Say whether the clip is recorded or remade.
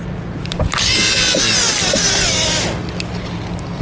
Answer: recorded